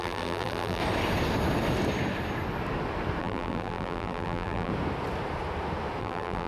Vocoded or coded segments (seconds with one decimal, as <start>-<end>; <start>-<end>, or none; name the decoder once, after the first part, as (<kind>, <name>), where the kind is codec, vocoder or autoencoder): 0.0-0.8 (vocoder, BigVGAN v2); 3.2-4.7; 6.0-6.5